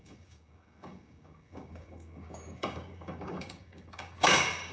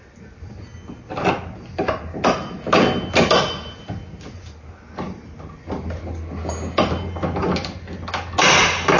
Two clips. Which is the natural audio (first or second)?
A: second